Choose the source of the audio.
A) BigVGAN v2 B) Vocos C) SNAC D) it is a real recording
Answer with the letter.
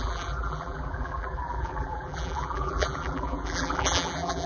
A